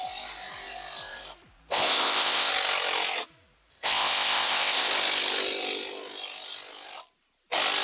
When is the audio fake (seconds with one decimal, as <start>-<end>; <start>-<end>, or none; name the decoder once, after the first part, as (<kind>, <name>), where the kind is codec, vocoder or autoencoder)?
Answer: 1.7-2.5 (codec, ZipCodec); 3.7-4.9